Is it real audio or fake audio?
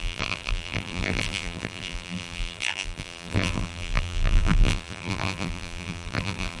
fake